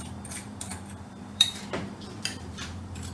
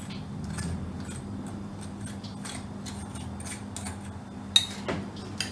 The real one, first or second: second